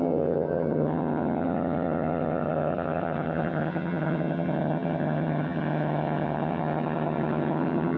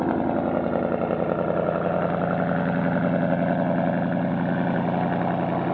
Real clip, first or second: second